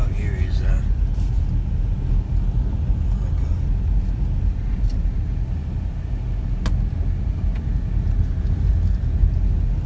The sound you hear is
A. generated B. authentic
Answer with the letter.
B